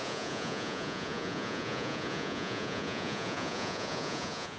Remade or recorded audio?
remade